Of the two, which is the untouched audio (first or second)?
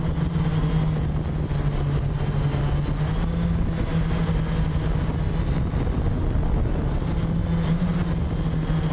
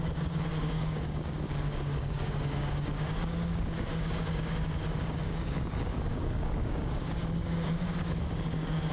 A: first